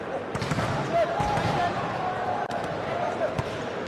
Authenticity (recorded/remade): remade